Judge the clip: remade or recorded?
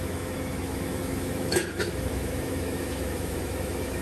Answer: remade